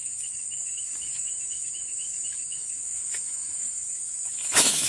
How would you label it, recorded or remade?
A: remade